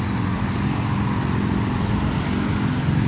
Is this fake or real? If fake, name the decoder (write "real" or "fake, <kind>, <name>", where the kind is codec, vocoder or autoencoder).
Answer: real